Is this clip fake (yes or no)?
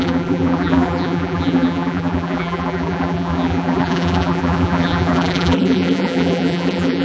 yes